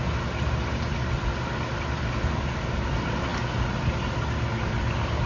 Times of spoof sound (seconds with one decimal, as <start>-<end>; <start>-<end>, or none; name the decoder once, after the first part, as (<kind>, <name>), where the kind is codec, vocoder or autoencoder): none